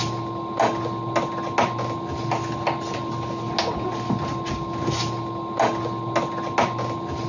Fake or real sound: real